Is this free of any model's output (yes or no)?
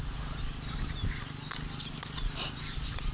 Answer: yes